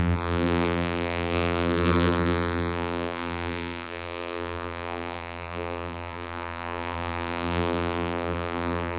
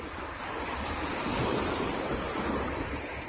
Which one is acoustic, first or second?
second